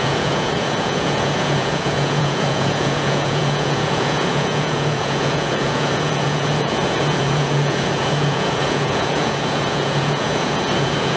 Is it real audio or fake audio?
fake